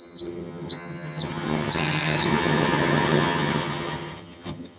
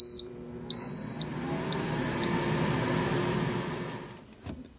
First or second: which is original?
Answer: second